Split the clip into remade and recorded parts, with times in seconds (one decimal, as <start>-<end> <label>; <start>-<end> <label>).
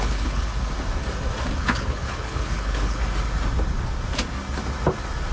0.0-0.5 remade; 0.5-1.6 recorded; 1.6-3.0 remade; 3.0-5.3 recorded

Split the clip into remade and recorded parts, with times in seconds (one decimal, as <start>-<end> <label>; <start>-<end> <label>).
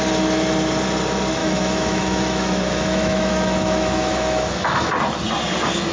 0.0-1.4 recorded; 1.4-4.9 remade; 4.9-5.9 recorded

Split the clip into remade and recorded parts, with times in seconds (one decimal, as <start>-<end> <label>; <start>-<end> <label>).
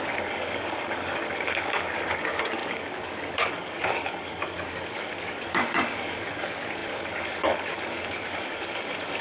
0.0-9.2 remade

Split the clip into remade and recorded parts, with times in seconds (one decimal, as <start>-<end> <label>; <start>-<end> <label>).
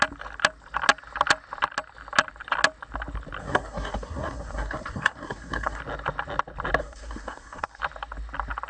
0.0-3.4 recorded; 3.4-5.8 remade; 5.8-6.8 recorded; 6.8-7.8 remade; 7.8-8.7 recorded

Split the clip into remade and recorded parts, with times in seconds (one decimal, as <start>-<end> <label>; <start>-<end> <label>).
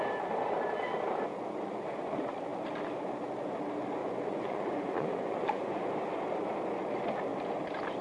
0.0-4.0 recorded; 4.0-5.9 remade; 5.9-8.0 recorded